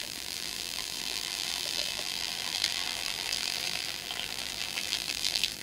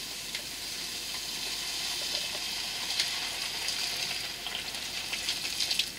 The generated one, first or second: first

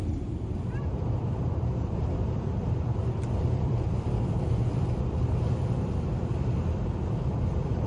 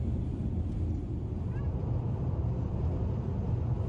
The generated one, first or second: first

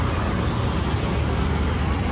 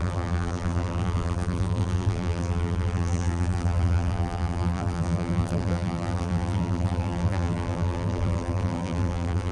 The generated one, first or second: second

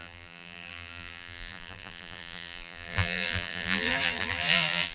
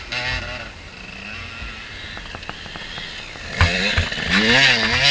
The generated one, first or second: first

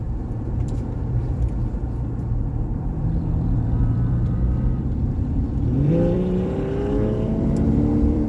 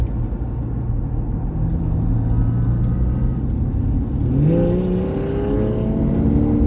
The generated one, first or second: first